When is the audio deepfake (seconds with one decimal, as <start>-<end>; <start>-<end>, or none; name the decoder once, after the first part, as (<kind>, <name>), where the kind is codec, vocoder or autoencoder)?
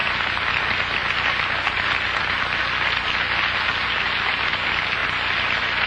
none